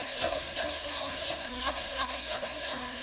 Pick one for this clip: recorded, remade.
remade